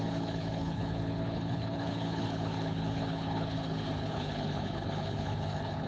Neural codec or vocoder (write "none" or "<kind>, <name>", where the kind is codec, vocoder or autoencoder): codec, HILCodec